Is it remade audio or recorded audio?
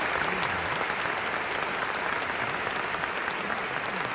recorded